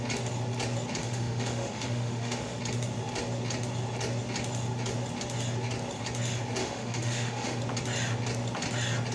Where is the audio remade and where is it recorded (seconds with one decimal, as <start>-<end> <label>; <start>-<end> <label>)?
0.0-1.0 recorded; 1.0-2.6 remade; 2.6-6.6 recorded; 6.6-7.6 remade; 7.6-9.1 recorded